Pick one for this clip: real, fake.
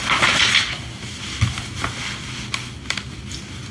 real